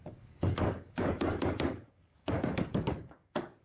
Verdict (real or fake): fake